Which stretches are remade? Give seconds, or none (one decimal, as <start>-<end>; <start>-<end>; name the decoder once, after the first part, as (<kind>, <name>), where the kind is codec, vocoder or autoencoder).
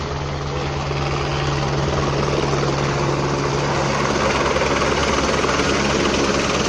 none